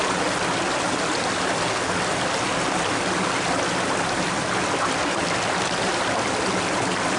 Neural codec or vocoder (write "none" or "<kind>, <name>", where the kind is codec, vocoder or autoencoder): none